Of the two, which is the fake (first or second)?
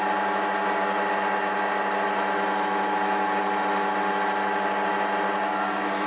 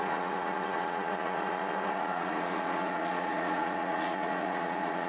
second